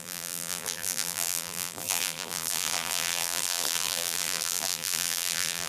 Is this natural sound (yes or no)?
no